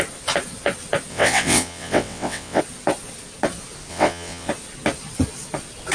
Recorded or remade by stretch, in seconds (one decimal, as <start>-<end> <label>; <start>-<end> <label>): 0.0-1.1 recorded; 1.1-2.6 remade; 2.6-3.9 recorded; 3.9-4.5 remade; 4.5-5.9 recorded